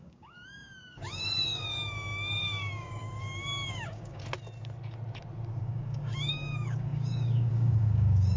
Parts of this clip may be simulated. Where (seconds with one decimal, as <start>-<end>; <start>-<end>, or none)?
0.0-4.2; 5.6-8.4

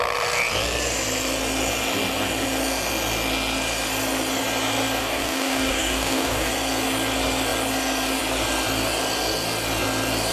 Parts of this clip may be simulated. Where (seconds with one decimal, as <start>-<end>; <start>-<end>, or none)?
5.0-6.5

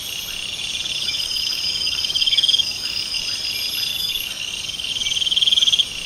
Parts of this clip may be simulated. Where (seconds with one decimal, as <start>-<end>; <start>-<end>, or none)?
1.0-3.2; 3.9-4.9

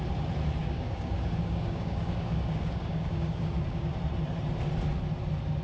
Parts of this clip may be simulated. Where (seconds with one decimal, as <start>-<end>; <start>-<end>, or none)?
0.6-3.9